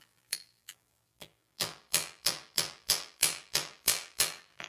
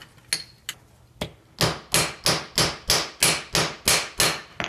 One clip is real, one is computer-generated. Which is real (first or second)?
second